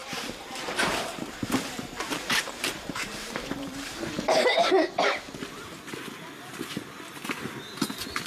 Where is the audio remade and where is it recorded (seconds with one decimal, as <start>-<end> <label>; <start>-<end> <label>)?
0.0-4.7 remade; 4.7-8.3 recorded